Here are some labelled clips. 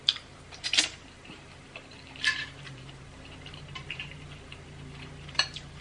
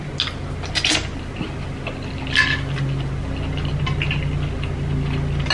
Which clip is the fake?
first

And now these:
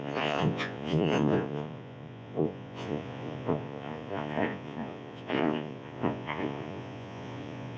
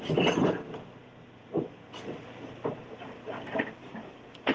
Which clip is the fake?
first